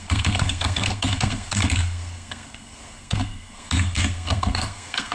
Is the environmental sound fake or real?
fake